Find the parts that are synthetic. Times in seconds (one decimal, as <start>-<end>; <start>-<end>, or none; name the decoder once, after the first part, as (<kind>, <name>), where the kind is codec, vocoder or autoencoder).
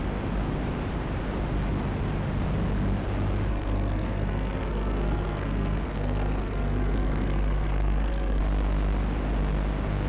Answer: 3.5-8.4 (codec, SNAC)